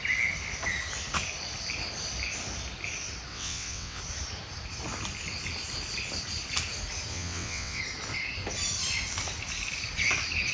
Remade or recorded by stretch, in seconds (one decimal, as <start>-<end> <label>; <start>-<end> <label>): 0.0-3.3 recorded; 3.3-4.0 remade; 4.0-7.1 recorded; 7.1-7.8 remade; 7.8-10.5 recorded